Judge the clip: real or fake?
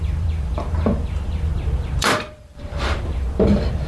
fake